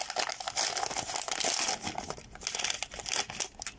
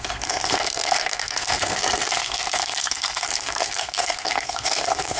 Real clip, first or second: first